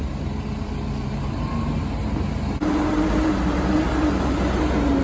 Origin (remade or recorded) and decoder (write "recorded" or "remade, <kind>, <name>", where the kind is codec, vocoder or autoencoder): remade, vocoder, BigVGAN v2